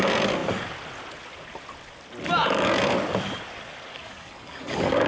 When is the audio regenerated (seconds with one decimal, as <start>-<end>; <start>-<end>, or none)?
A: 3.9-5.1